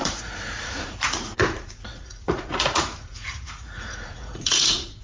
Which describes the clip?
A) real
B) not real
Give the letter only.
B